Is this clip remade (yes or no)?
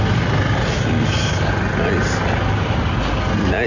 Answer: no